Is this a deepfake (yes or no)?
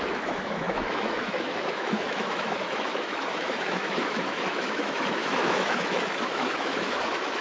yes